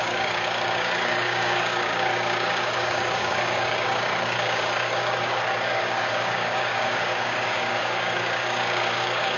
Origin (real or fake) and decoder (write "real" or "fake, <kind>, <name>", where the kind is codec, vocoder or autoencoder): fake, codec, DAC